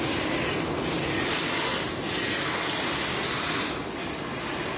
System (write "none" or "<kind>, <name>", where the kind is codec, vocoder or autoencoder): none